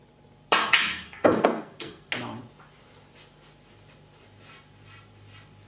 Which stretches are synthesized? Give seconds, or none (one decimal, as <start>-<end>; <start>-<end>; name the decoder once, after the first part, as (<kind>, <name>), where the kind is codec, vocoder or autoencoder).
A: 0.6-2.1 (codec, SNAC)